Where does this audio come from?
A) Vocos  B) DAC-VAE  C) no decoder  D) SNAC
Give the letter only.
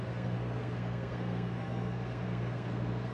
D